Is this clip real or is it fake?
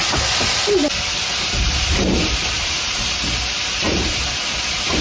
fake